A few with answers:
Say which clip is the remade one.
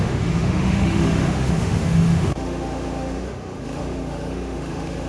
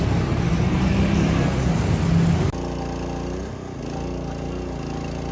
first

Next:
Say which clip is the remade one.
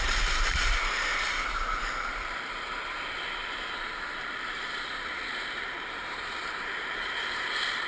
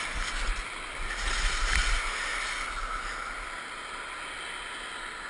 first